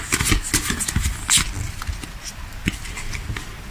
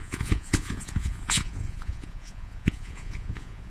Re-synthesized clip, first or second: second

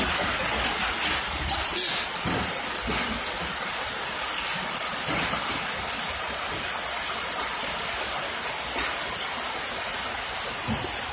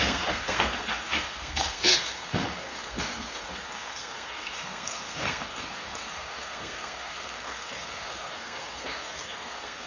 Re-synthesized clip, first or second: second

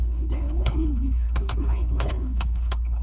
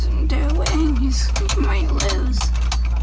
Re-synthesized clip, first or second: first